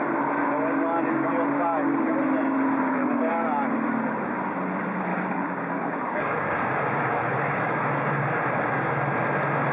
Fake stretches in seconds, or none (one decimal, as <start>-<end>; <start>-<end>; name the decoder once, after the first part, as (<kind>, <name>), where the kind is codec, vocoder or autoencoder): 2.8-3.3 (codec, DAC); 5.1-6.7; 7.3-8.9